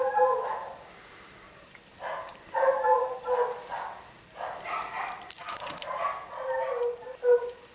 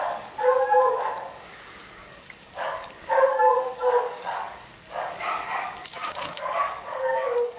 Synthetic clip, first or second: second